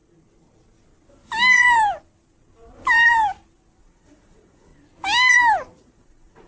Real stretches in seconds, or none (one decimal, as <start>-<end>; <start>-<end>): 0.0-3.8; 4.7-5.8